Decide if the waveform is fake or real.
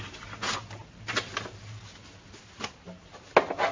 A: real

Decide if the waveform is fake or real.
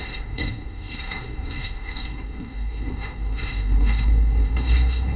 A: fake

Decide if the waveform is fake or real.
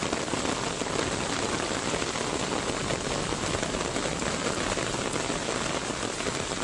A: real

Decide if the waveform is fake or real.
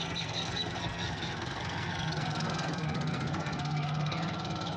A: fake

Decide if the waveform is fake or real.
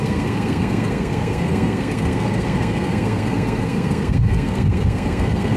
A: fake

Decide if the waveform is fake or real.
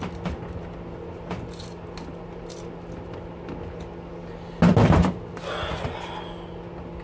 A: real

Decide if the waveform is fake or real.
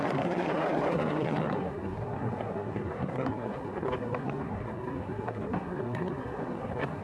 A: fake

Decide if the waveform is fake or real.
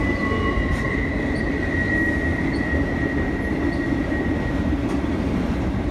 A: real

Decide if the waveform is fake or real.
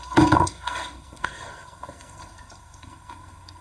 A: fake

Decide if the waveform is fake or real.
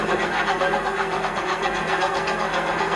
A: fake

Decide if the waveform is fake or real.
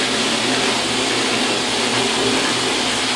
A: real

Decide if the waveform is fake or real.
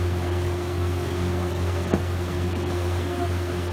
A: fake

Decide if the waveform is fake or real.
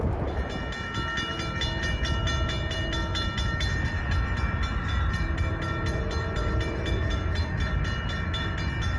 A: real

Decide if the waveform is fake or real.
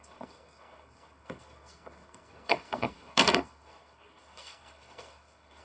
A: fake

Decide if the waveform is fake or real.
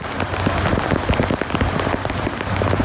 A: real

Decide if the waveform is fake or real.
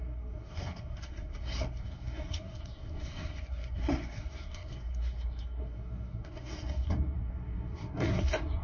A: fake